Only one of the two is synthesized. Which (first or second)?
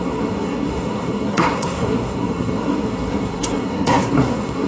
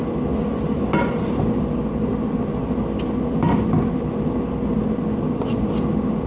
first